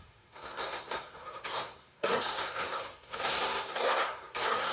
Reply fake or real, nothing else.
fake